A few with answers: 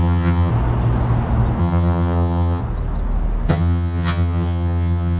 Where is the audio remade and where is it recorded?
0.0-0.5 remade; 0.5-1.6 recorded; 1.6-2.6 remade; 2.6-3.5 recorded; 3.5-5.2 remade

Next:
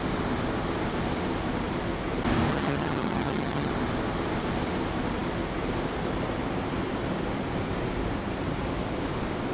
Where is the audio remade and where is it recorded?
0.0-2.5 recorded; 2.5-3.7 remade; 3.7-9.5 recorded

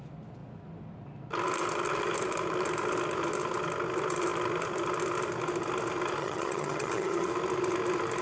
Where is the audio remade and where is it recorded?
0.0-6.2 recorded; 6.2-7.3 remade; 7.3-8.2 recorded

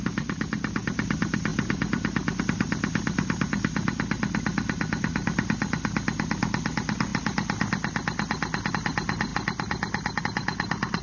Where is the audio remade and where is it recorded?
0.0-11.0 recorded

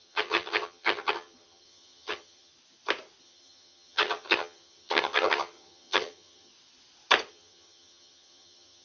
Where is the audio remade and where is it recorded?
0.0-2.5 remade; 2.5-3.2 recorded; 3.2-6.5 remade; 6.5-7.3 recorded; 7.3-8.8 remade

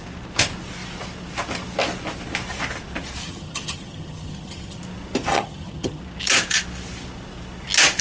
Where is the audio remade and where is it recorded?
0.0-3.2 recorded; 3.2-4.8 remade; 4.8-5.3 recorded; 5.3-6.0 remade; 6.0-8.0 recorded

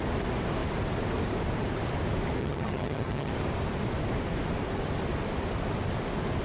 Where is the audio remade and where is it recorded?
0.0-2.4 recorded; 2.4-3.3 remade; 3.3-6.4 recorded

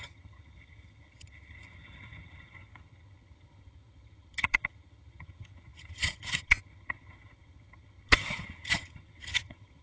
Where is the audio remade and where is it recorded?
0.0-9.8 remade